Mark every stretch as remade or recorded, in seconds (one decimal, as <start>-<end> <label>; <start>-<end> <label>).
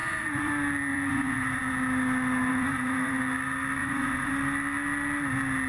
0.0-0.5 remade; 0.5-0.9 recorded; 0.9-1.6 remade; 1.6-2.5 recorded; 2.5-3.2 remade; 3.2-3.8 recorded; 3.8-4.3 remade; 4.3-5.7 recorded